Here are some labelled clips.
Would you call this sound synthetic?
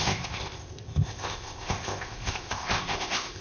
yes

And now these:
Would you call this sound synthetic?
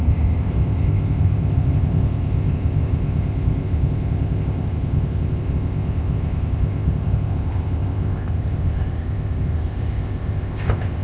yes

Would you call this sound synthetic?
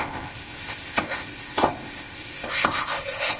yes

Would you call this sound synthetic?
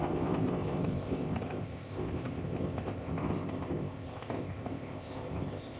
yes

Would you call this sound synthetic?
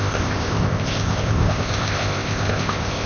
yes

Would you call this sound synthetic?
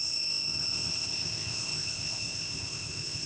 yes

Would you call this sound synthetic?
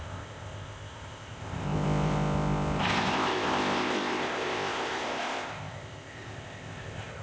yes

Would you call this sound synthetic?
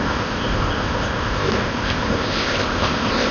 yes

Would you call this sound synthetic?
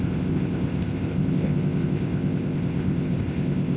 yes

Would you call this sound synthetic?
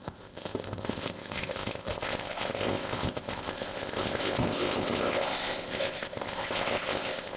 yes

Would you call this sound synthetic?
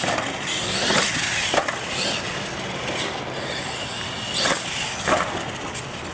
no